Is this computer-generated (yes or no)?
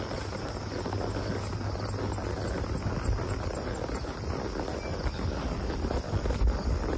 no